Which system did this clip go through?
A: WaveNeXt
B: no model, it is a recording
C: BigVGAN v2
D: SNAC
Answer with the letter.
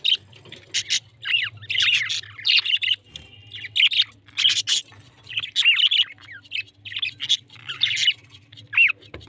B